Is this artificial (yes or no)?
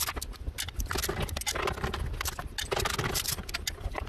no